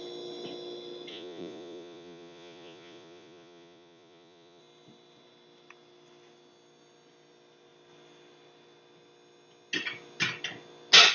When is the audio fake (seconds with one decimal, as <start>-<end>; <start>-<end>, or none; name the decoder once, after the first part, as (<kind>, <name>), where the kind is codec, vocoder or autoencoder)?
1.1-4.6 (vocoder, Vocos)